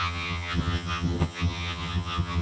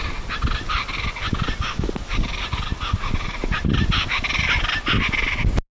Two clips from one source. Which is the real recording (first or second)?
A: second